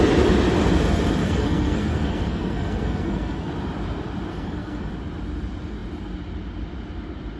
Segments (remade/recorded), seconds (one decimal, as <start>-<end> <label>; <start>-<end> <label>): 0.0-1.2 recorded; 1.2-3.5 remade; 3.5-4.3 recorded; 4.3-4.9 remade; 4.9-7.4 recorded